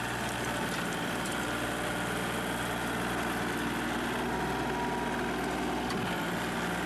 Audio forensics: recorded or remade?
recorded